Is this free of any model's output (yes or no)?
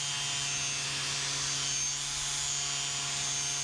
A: yes